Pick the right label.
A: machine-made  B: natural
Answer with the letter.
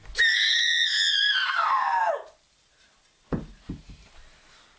B